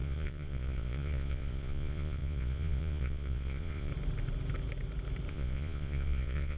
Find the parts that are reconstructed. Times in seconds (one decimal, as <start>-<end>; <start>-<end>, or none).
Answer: 0.0-3.9; 5.3-6.6